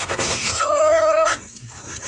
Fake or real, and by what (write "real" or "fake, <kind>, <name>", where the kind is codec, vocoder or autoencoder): fake, codec, SNAC